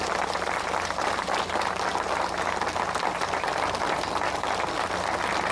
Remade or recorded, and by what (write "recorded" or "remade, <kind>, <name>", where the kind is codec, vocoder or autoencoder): recorded